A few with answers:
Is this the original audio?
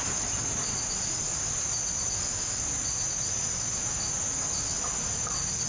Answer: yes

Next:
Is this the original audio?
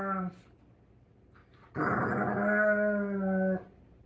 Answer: yes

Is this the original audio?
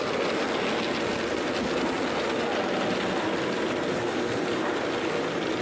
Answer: yes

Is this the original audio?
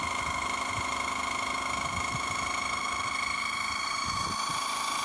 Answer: no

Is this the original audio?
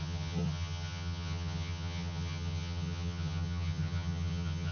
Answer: no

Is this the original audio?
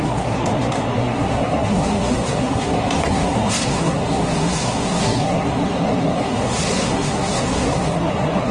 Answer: no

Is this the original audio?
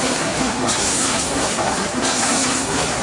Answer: no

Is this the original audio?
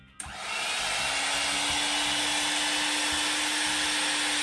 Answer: yes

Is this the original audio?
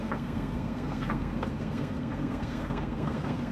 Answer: no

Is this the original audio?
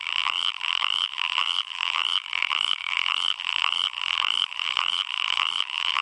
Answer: no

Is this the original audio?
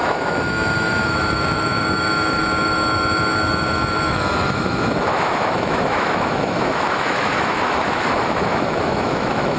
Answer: no